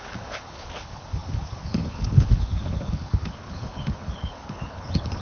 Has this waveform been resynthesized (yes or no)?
yes